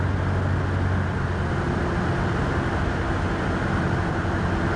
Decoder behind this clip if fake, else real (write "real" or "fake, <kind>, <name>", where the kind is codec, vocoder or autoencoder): real